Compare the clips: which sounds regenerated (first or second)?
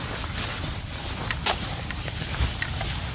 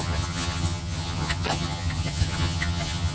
second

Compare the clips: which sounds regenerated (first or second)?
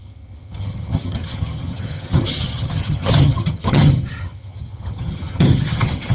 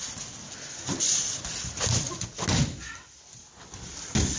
first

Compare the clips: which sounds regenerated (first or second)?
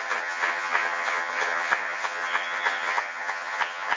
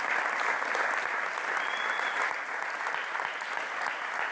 first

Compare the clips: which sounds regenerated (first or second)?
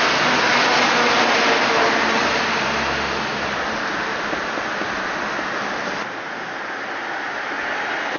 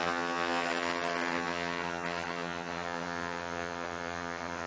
second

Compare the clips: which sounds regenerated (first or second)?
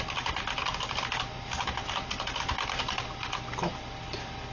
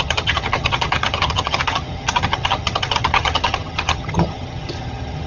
second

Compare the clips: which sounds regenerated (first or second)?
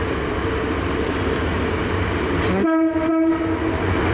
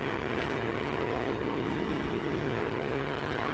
second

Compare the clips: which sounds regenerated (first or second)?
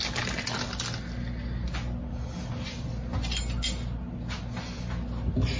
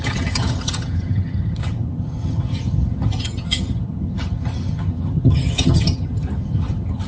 second